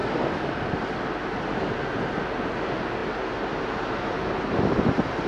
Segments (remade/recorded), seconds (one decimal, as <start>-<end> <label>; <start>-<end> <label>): 0.0-5.3 recorded